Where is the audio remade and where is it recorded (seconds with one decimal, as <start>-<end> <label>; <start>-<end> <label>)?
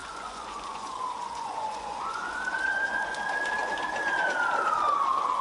0.0-3.2 remade; 3.2-5.4 recorded